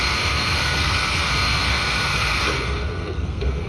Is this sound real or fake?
fake